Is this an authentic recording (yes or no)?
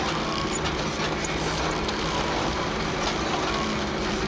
yes